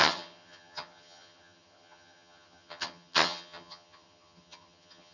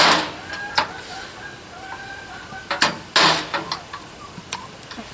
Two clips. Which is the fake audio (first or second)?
first